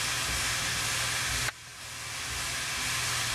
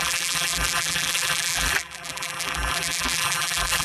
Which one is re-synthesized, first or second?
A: second